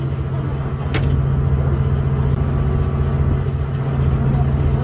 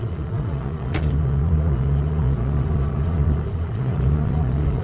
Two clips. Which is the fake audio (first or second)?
second